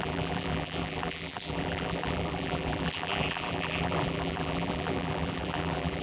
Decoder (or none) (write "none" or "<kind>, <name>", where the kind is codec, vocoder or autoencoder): vocoder, BigVGAN v2